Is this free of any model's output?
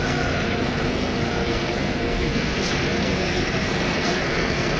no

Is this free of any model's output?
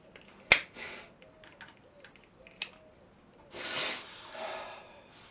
yes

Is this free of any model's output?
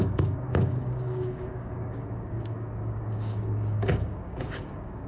no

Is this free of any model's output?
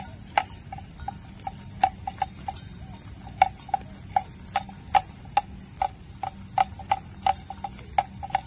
yes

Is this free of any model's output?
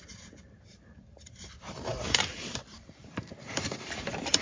no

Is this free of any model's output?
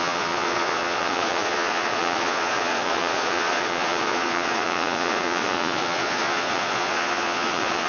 no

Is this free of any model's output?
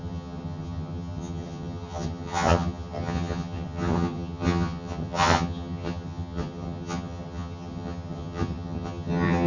no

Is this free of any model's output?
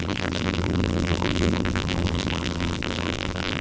no